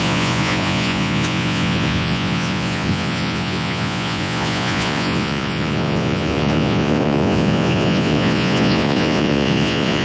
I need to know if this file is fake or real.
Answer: fake